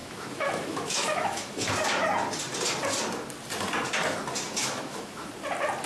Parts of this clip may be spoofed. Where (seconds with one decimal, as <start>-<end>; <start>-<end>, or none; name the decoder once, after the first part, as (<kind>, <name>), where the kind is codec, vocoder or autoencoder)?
0.0-1.7 (autoencoder, DAC-VAE); 4.6-5.3